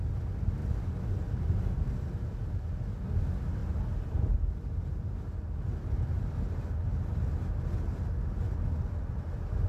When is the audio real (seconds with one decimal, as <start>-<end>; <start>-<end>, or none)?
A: 0.0-3.6; 4.7-9.7